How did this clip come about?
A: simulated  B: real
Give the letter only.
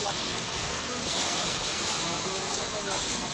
A